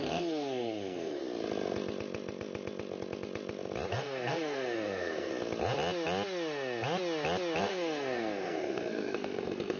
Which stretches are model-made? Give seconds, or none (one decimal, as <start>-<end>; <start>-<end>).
0.0-1.2; 3.9-5.3; 7.6-9.8